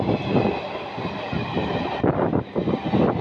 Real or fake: real